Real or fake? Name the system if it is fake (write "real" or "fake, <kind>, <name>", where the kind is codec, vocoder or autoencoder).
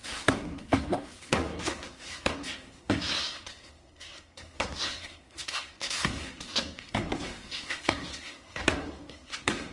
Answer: fake, codec, SNAC